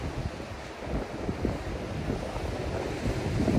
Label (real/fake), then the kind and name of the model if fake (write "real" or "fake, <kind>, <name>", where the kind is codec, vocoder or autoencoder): real